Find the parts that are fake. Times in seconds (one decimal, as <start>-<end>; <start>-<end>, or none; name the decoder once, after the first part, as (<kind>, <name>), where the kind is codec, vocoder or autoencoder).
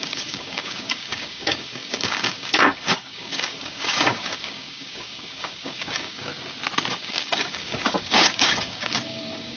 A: 0.0-6.3 (codec, DAC); 6.9-9.6